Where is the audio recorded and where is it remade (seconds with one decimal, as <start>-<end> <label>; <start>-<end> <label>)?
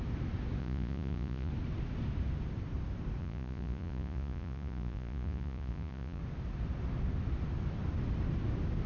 0.0-0.6 recorded; 0.6-1.5 remade; 1.5-3.2 recorded; 3.2-6.2 remade; 6.2-8.9 recorded